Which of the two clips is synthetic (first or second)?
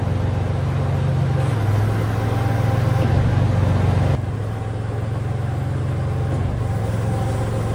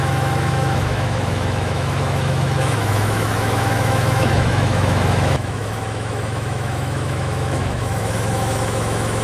second